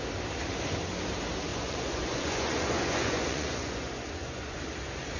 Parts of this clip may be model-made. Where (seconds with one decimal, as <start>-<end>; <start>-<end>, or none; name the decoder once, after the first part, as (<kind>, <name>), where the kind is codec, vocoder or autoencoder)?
1.5-4.6 (vocoder, Vocos)